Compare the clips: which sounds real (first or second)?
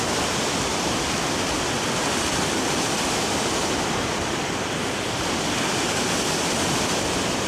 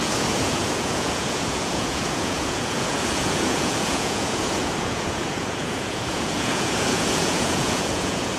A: first